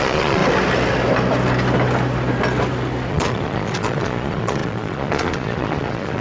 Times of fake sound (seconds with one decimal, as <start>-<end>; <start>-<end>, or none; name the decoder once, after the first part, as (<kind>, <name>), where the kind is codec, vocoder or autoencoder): 0.0-0.4 (vocoder, Vocos); 3.1-6.2